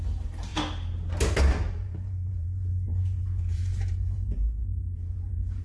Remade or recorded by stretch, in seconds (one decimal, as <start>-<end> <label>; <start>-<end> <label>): 0.0-0.5 remade; 0.5-1.7 recorded; 1.7-5.6 remade